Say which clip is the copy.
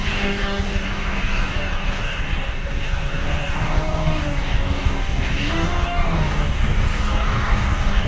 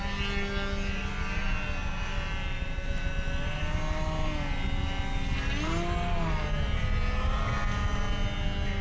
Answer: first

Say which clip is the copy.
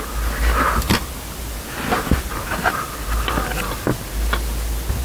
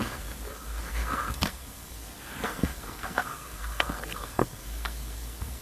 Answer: second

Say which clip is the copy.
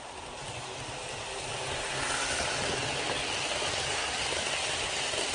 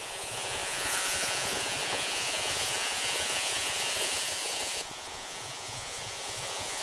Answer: second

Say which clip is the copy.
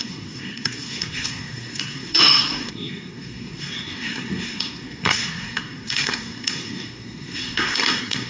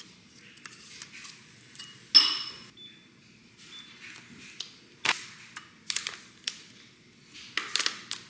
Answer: first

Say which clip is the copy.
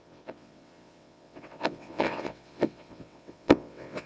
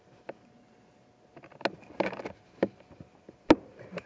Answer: first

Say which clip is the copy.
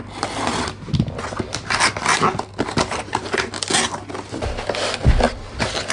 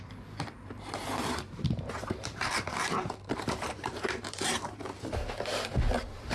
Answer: second